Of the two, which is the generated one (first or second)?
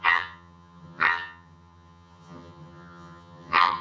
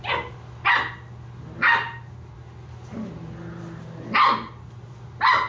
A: first